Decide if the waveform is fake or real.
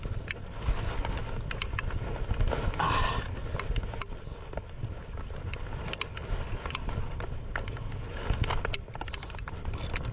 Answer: real